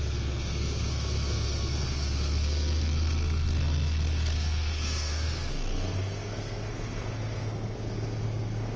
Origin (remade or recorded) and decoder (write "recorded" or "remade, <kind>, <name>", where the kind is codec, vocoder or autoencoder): remade, codec, SNAC